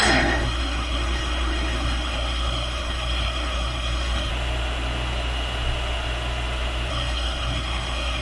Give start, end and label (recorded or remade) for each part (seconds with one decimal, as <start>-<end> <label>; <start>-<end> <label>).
0.0-4.3 remade; 4.3-6.9 recorded; 6.9-8.2 remade